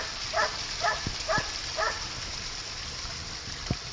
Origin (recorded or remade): recorded